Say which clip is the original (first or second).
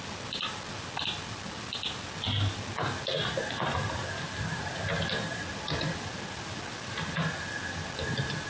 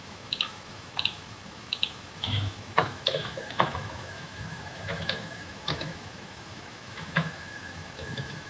first